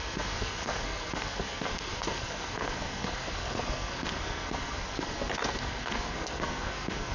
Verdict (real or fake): fake